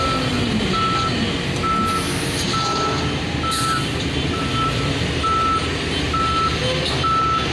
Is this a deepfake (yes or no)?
no